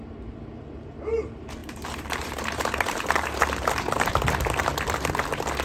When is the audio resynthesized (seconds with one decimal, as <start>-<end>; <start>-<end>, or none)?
1.6-4.1